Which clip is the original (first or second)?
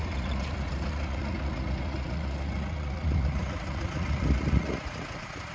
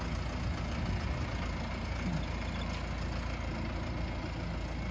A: second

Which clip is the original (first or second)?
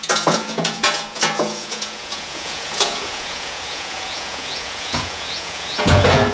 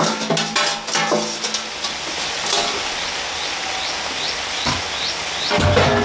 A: second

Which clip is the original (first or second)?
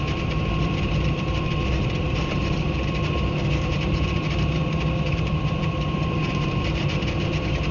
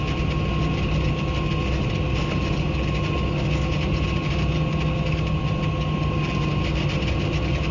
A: second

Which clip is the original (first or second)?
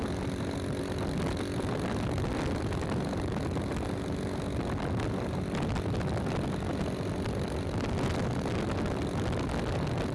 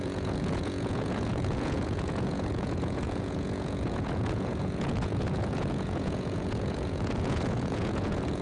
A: first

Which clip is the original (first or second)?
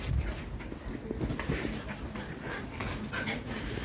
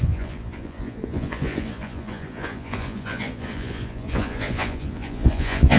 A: first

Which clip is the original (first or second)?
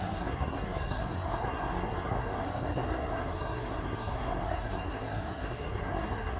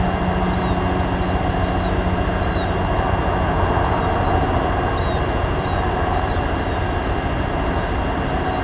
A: second